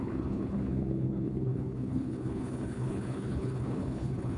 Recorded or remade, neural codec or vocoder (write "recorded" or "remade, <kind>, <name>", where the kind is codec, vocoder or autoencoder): remade, codec, HILCodec